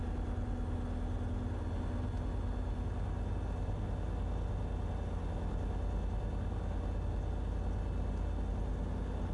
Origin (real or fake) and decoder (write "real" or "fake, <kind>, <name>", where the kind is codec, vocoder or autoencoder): real